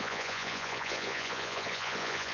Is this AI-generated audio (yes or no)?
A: yes